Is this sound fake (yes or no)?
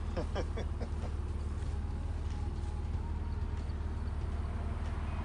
no